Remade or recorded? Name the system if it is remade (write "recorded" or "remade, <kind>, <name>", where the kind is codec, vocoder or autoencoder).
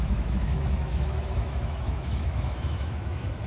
remade, autoencoder, DAC-VAE